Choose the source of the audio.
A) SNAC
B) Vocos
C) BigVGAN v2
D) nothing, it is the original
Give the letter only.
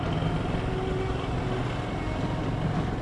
D